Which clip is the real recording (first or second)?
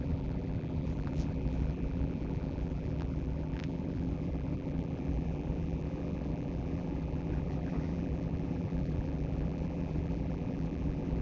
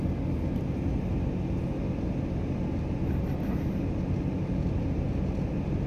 second